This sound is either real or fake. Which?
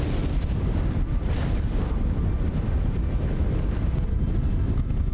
real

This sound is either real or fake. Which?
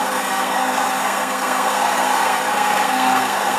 fake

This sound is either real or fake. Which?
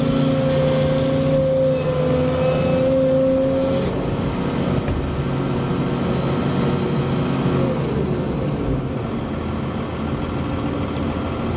real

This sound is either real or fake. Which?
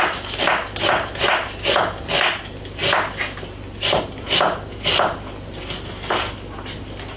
real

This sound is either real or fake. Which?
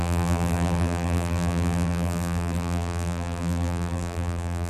fake